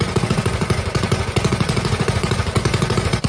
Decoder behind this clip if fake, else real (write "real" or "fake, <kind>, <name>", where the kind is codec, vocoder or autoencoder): fake, vocoder, Vocos